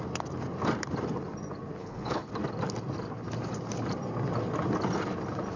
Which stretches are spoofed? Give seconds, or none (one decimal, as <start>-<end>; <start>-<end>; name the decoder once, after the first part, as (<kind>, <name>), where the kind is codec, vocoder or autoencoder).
1.8-2.3 (codec, HILCodec)